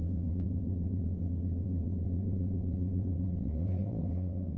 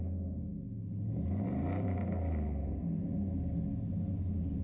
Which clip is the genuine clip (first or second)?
second